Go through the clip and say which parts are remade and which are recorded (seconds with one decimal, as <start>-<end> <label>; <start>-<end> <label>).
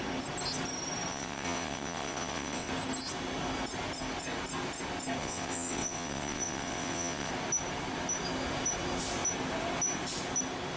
0.0-1.1 recorded; 1.1-2.7 remade; 2.7-5.2 recorded; 5.2-7.3 remade; 7.3-10.8 recorded